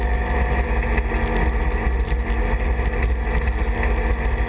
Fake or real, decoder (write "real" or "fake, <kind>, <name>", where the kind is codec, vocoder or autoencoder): real